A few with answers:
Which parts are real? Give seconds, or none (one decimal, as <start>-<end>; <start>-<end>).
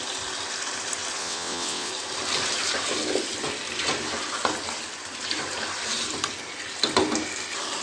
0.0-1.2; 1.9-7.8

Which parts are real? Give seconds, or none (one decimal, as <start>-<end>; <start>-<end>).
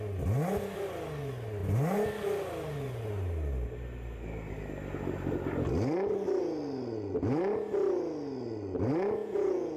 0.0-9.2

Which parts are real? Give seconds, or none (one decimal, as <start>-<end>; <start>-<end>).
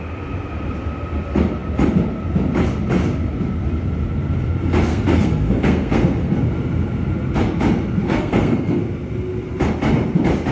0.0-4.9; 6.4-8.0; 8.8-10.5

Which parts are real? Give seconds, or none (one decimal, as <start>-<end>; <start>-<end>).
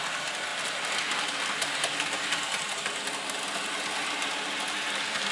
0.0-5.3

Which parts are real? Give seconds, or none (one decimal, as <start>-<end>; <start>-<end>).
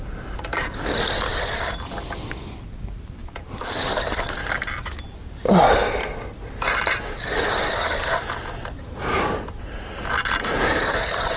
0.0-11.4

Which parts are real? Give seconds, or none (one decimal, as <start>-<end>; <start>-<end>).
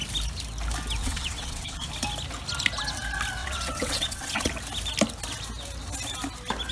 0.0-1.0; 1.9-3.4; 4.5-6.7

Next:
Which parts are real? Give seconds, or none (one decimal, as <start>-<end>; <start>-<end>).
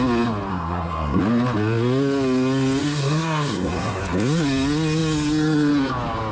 0.0-0.5; 1.2-2.8; 4.0-6.3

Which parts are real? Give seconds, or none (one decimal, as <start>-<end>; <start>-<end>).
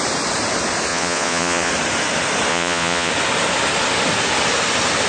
0.0-0.9; 1.7-2.5; 3.1-5.1